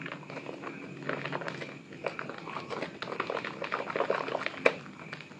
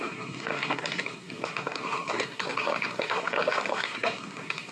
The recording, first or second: first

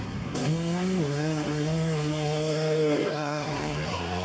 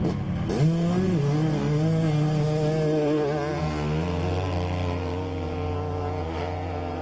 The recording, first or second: second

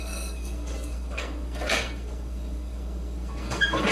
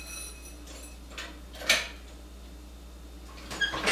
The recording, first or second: second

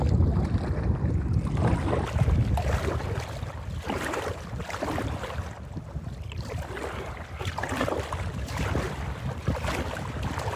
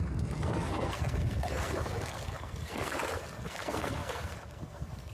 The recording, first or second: first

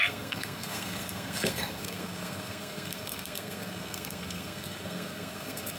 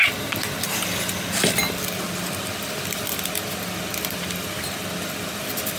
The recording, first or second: second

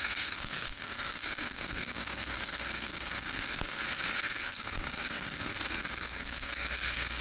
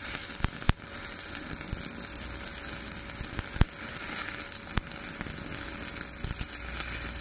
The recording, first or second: second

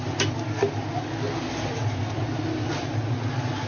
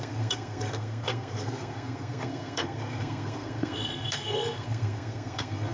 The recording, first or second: first